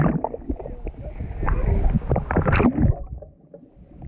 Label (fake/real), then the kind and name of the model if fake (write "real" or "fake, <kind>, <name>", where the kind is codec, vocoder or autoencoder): real